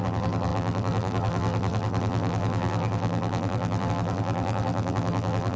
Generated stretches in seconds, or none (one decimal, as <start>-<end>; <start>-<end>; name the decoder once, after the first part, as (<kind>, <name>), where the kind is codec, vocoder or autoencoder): 0.0-5.6 (vocoder, BigVGAN v2)